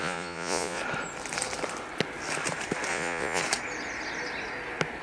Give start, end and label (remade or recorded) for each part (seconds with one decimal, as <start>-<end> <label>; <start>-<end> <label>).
0.0-0.8 remade; 0.8-2.9 recorded; 2.9-3.4 remade; 3.4-5.0 recorded